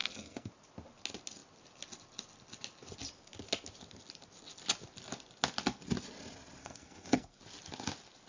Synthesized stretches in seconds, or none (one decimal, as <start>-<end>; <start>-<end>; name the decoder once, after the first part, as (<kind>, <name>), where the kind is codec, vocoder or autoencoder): 0.0-0.5 (codec, SNAC); 6.6-7.4